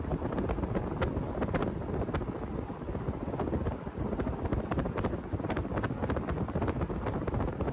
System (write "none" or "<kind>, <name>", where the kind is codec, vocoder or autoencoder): none